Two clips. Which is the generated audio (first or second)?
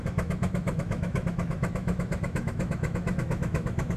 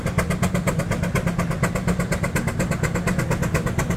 first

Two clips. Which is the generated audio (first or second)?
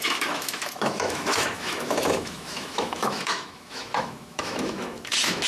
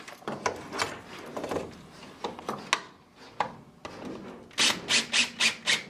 first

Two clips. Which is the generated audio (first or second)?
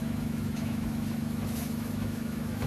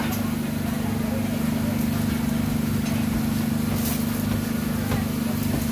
first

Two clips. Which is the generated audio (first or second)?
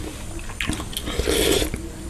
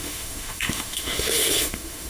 second